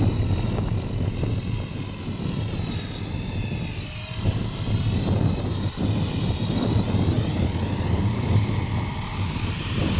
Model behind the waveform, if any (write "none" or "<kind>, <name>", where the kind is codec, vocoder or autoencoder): none